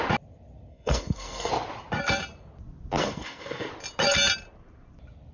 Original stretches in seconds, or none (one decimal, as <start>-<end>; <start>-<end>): 0.0-0.7; 1.5-3.0; 3.7-5.3